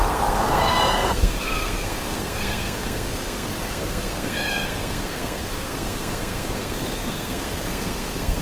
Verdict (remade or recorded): remade